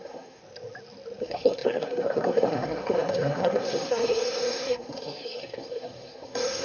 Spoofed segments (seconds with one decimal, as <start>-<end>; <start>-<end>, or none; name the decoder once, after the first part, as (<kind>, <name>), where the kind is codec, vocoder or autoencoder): 0.0-0.4 (codec, SNAC); 1.2-6.6